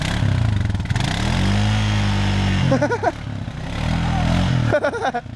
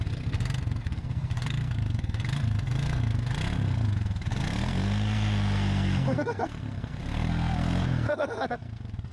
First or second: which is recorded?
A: first